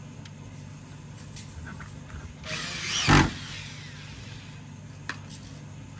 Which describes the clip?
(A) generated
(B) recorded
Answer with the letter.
B